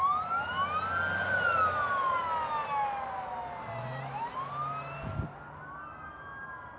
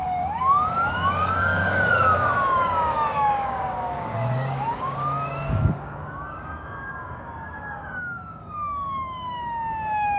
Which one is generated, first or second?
second